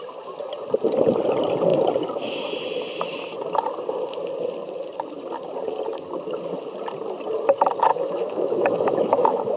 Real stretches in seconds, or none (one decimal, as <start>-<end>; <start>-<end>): 0.0-7.9